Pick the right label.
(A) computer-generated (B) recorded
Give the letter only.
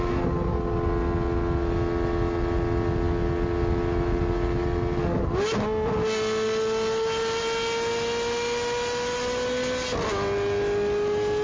B